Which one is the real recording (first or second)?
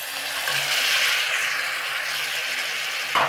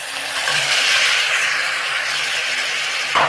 first